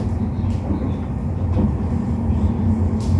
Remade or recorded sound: recorded